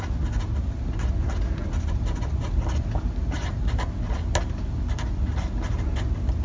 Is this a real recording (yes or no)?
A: yes